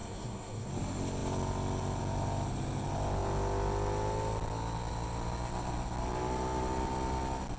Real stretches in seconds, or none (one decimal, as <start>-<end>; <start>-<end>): 0.7-7.6